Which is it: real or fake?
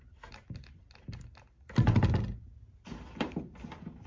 real